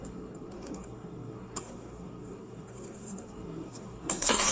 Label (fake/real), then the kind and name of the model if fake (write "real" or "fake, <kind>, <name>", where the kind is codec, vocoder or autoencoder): fake, codec, SNAC